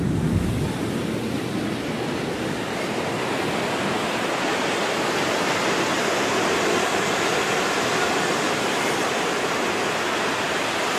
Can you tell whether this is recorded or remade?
recorded